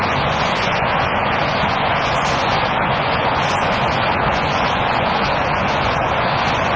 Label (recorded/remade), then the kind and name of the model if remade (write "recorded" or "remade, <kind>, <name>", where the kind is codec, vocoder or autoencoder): remade, vocoder, Vocos